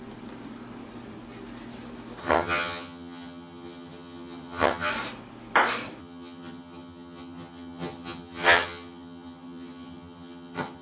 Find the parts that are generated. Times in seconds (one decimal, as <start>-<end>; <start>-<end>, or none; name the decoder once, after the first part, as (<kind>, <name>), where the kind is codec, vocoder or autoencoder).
2.2-4.9 (vocoder, HiFi-GAN); 6.0-10.8